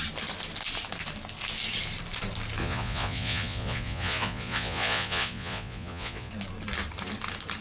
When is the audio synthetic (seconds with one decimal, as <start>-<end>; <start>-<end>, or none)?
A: 2.6-6.3